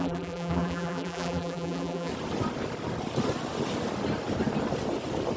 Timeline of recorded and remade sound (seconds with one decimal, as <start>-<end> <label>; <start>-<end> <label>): 0.0-2.1 remade; 2.1-5.4 recorded